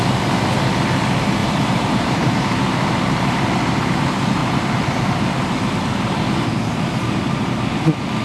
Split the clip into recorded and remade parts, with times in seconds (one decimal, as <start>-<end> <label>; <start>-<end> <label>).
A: 0.0-1.4 recorded; 1.4-3.9 remade; 3.9-4.4 recorded; 4.4-7.6 remade; 7.6-8.2 recorded